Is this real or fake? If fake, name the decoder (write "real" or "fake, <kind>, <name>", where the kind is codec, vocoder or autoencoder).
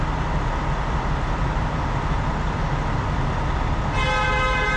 real